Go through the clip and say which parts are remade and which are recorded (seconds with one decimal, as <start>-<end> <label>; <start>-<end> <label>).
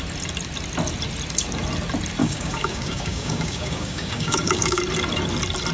0.0-2.2 recorded; 2.2-4.8 remade; 4.8-5.7 recorded